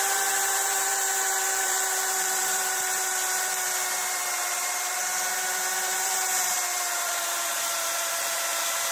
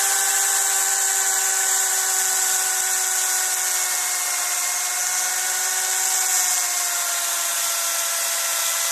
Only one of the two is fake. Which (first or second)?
first